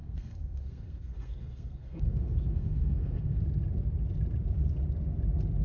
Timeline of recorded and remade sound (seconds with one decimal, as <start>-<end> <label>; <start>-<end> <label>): 0.0-3.4 remade; 3.4-5.6 recorded

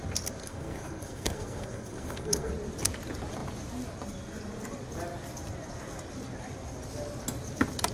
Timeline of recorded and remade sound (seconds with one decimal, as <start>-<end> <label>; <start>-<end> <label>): 0.0-0.4 recorded; 0.4-2.5 remade; 2.5-7.9 recorded

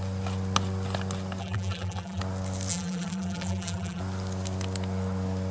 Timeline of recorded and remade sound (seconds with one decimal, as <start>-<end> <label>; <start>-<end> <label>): 0.0-1.4 recorded; 1.4-2.2 remade; 2.2-2.7 recorded; 2.7-4.0 remade; 4.0-5.5 recorded

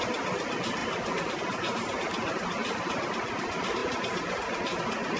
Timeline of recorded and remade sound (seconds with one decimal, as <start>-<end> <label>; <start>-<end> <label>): 0.0-0.8 recorded; 0.8-1.3 remade; 1.3-5.2 recorded

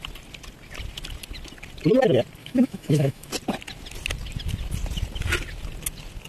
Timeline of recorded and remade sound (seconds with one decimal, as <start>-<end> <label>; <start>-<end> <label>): 0.0-2.4 recorded; 2.4-3.3 remade; 3.3-6.3 recorded

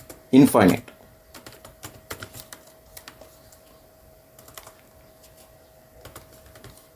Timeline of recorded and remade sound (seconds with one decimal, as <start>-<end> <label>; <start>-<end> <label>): 0.0-7.0 recorded